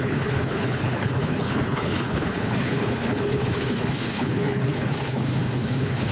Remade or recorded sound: remade